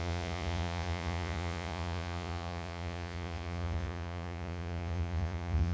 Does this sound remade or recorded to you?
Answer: remade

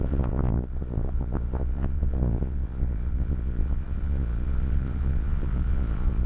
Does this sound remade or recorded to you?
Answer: remade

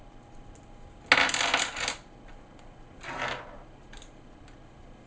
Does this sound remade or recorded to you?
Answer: recorded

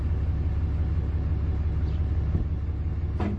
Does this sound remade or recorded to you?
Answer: recorded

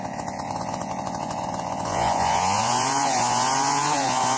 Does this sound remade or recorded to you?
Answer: remade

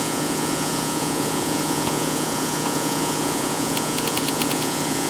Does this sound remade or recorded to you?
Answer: remade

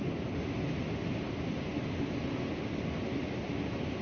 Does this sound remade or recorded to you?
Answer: recorded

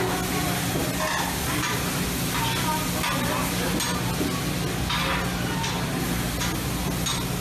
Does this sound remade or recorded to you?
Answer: recorded